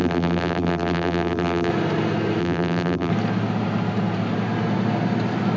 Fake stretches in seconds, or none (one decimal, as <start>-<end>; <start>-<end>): 0.0-1.7; 2.4-3.1